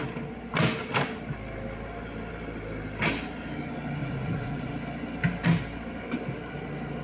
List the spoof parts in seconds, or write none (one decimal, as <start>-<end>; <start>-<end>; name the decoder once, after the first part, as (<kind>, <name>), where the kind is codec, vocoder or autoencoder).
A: 4.0-4.7 (vocoder, Vocos)